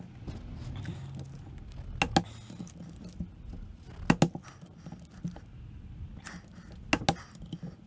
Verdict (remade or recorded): recorded